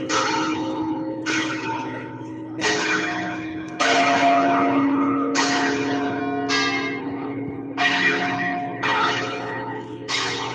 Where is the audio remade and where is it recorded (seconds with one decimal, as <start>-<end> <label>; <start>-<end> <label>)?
0.0-6.2 remade; 6.2-7.0 recorded; 7.0-10.5 remade